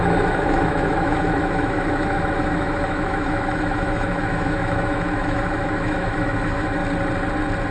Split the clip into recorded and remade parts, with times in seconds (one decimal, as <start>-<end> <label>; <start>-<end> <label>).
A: 0.0-6.8 remade; 6.8-7.7 recorded